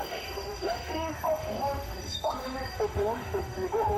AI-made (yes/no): yes